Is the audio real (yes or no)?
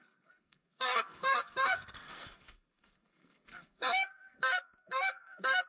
no